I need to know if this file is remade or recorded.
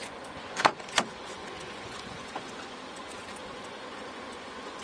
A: remade